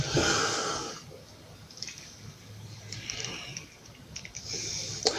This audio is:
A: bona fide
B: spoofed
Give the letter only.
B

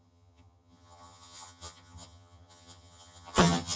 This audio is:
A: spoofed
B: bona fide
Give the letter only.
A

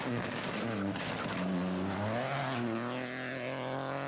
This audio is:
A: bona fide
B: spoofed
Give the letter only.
A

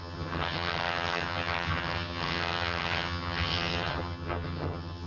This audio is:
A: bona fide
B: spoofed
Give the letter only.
B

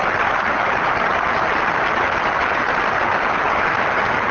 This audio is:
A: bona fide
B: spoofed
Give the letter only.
A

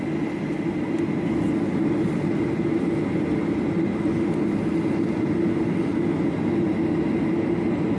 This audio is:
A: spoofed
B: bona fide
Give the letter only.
B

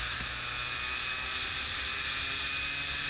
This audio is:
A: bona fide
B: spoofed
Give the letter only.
A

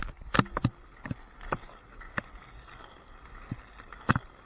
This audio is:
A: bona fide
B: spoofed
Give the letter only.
A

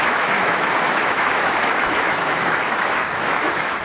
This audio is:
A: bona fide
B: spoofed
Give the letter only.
B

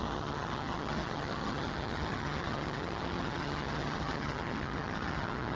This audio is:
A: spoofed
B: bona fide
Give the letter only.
A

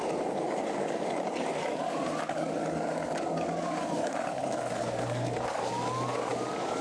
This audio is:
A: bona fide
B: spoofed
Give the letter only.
B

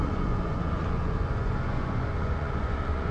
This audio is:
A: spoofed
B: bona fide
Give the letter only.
A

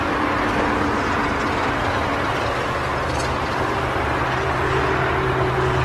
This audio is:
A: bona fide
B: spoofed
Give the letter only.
A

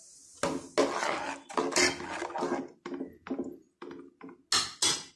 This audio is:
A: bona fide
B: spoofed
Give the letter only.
A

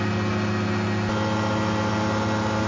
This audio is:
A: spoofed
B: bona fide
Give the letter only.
B